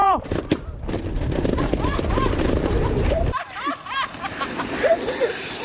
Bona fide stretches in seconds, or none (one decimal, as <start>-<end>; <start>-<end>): 0.9-5.6